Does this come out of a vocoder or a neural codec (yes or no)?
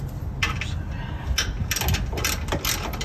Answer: no